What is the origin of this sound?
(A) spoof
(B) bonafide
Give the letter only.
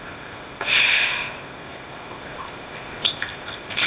A